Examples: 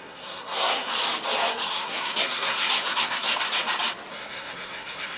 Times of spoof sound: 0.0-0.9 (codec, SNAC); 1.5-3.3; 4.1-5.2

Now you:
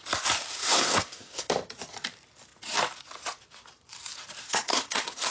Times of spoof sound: 0.5-1.5 (codec, SNAC); 4.4-5.3

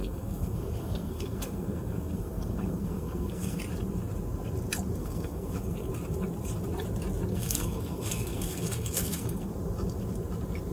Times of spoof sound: 0.0-3.6 (codec, SNAC); 5.0-5.9; 7.3-9.5

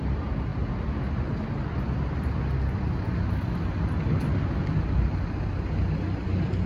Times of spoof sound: none

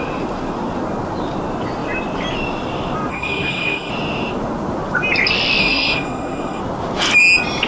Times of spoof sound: 3.1-3.9 (codec, SNAC); 5.6-6.6

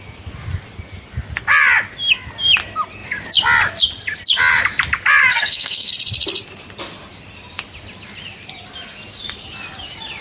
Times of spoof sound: 5.3-5.9 (codec, SNAC)

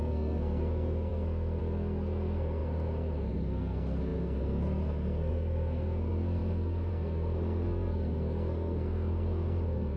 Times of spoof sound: 0.0-10.0 (codec, SNAC)

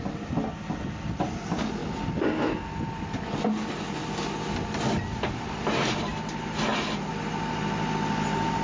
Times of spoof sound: none